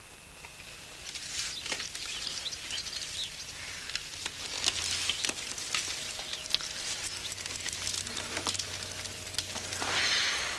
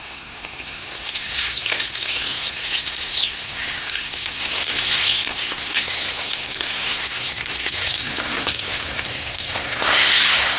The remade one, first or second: second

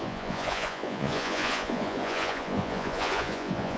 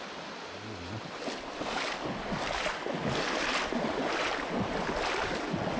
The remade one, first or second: first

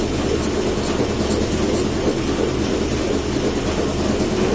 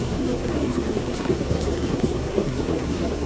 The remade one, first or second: second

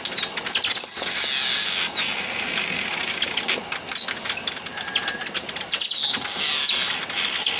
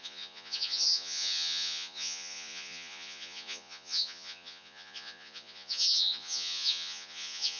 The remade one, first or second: second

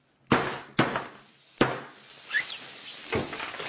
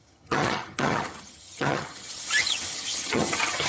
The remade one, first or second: second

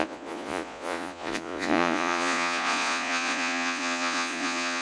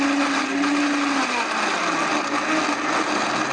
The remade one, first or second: first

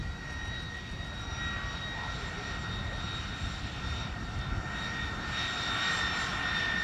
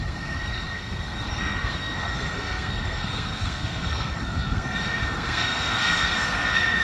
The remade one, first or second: second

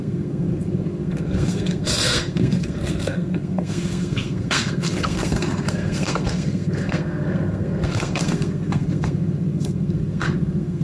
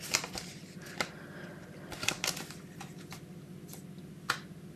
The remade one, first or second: first